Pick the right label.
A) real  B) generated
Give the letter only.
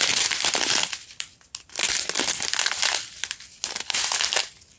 A